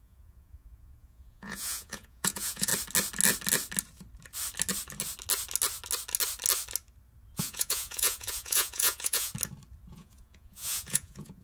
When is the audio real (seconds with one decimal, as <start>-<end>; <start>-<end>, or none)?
2.7-7.4; 9.3-9.9